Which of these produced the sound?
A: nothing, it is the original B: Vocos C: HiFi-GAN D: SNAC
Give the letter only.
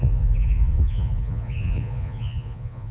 B